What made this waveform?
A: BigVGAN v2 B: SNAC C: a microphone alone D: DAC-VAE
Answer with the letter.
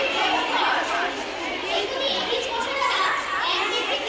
C